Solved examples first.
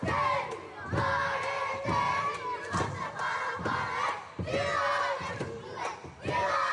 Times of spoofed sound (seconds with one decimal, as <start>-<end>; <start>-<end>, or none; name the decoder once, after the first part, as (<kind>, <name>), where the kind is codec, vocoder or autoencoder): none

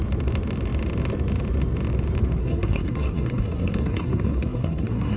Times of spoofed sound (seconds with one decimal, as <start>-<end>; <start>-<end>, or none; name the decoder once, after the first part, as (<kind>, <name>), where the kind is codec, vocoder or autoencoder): 2.4-5.2 (codec, SNAC)

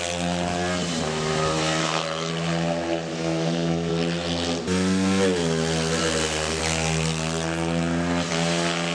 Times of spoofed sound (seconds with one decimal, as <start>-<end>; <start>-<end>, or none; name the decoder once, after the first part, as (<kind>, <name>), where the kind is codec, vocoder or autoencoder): 1.8-2.3 (codec, SNAC); 3.1-3.9; 6.0-6.6